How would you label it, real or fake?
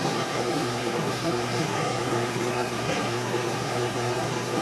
fake